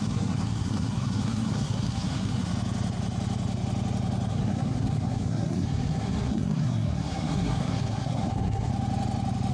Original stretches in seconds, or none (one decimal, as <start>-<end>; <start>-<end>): 2.5-4.3; 8.7-9.5